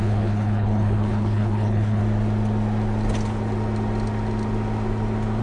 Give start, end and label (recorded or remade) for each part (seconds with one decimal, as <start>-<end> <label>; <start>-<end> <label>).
0.0-2.0 remade; 2.0-5.4 recorded